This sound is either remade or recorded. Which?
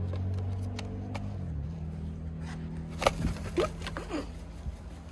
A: recorded